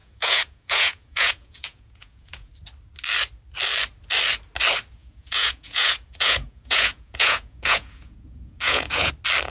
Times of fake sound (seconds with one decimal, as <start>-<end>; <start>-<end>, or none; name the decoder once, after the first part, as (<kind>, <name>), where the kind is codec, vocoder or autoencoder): 0.0-2.5 (vocoder, Vocos); 5.0-9.1